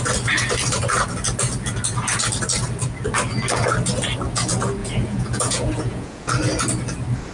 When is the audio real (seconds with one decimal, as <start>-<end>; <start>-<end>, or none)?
0.0-4.8; 6.3-7.3